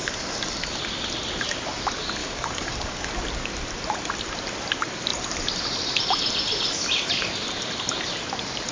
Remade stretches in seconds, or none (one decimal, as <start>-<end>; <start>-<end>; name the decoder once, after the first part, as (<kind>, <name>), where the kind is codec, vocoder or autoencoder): 0.0-0.8 (codec, DAC); 2.2-3.1